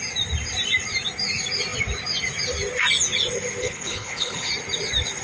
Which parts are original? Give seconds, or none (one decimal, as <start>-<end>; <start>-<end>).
0.0-3.6; 4.5-5.2